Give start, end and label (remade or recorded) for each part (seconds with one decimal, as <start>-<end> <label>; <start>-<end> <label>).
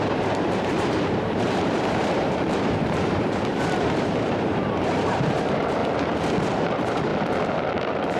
0.0-5.8 remade; 5.8-6.4 recorded; 6.4-7.1 remade; 7.1-7.7 recorded; 7.7-8.2 remade